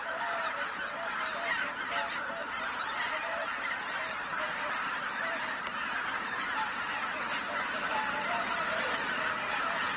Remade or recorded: remade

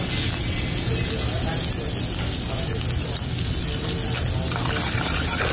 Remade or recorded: recorded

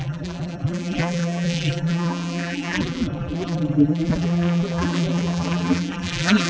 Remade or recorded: remade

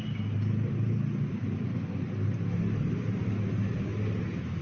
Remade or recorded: recorded